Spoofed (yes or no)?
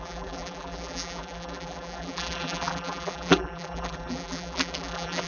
yes